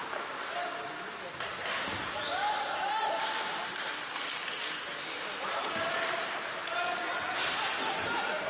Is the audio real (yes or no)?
yes